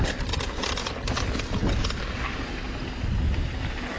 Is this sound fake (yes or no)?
no